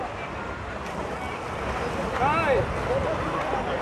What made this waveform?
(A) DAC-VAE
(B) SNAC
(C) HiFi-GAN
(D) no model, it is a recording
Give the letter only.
D